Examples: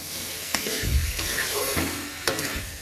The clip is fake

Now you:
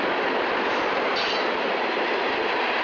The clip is real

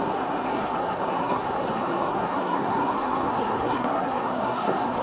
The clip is fake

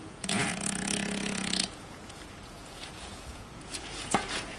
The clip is fake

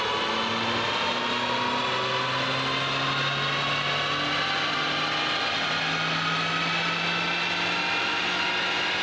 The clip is real